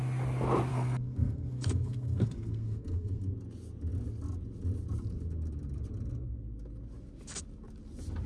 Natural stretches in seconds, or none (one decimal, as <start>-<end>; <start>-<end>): 0.0-0.7; 3.3-8.3